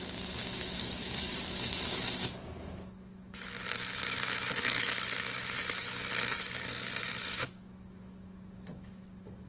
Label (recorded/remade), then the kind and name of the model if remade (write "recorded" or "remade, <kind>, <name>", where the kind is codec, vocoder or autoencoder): remade, autoencoder, DAC-VAE